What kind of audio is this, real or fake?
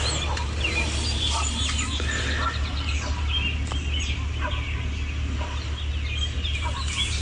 real